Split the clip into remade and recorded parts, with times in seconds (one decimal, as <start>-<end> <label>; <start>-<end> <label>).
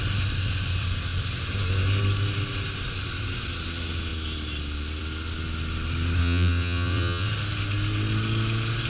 0.0-6.2 recorded; 6.2-7.3 remade; 7.3-8.9 recorded